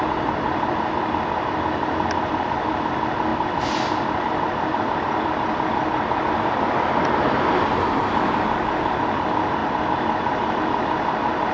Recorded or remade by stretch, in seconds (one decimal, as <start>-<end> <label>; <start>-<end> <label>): 0.0-11.5 recorded